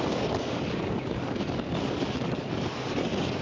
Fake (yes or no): yes